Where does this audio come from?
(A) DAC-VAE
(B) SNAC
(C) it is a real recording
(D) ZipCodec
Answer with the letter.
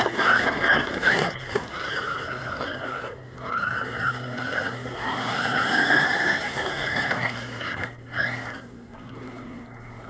B